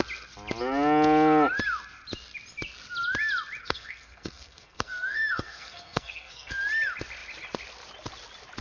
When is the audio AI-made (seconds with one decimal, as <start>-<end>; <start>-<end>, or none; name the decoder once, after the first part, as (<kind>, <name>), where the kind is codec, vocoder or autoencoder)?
3.6-6.6 (codec, SNAC)

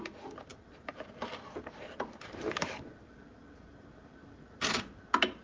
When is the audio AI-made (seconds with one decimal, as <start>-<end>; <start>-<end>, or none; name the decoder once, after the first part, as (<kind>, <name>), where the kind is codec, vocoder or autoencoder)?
none

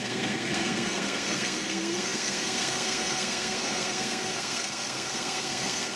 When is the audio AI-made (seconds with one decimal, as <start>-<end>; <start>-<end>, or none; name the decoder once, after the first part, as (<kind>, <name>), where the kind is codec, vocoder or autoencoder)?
0.0-6.0 (codec, SNAC)

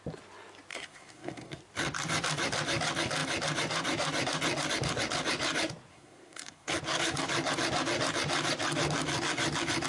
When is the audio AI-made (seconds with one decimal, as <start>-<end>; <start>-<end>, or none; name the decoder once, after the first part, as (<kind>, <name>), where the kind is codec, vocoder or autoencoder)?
0.7-1.6 (codec, SNAC); 5.9-6.7

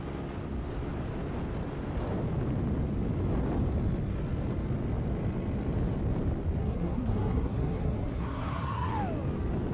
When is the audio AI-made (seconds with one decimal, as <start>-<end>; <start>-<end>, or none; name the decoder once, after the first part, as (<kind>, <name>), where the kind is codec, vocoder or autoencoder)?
6.6-8.9 (codec, SNAC)